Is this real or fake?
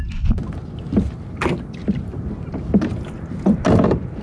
real